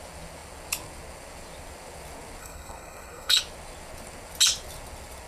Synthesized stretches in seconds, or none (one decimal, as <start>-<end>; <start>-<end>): 2.4-3.4

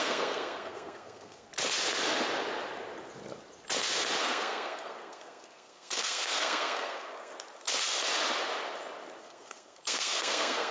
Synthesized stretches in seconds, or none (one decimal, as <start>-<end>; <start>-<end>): 0.0-1.5; 4.2-7.3; 9.2-10.7

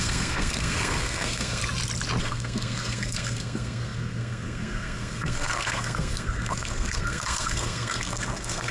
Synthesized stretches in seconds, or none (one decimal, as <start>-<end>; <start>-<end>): 0.0-1.6; 2.2-8.7